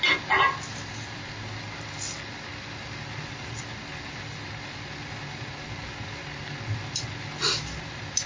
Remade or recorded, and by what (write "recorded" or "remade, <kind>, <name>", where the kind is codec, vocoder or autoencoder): recorded